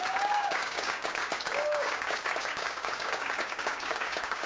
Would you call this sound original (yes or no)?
no